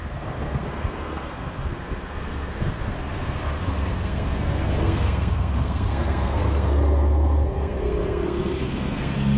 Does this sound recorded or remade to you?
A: remade